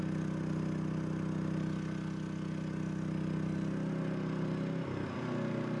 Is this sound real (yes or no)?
yes